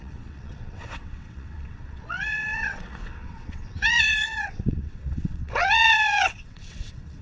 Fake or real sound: fake